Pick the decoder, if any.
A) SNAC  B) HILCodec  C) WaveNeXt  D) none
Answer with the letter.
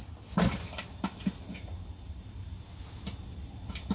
D